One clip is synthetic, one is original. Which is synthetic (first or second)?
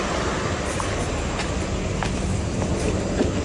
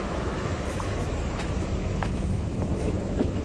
second